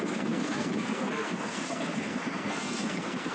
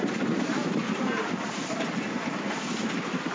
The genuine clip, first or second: second